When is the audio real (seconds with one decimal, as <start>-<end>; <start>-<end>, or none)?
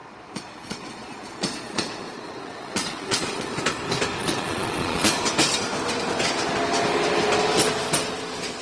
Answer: 3.6-4.2; 5.1-8.6